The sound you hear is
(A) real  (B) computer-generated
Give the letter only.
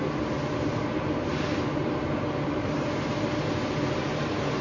B